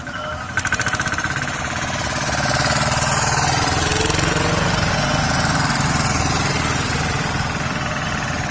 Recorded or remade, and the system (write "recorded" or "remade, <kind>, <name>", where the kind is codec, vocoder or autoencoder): recorded